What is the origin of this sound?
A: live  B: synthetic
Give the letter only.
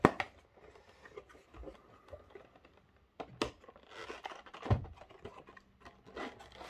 A